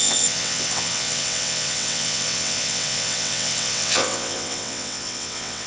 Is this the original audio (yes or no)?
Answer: no